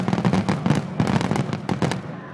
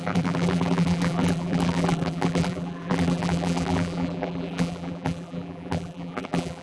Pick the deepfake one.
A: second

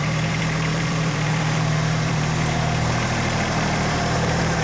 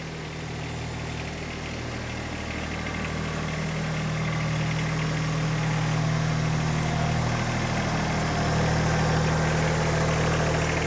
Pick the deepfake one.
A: first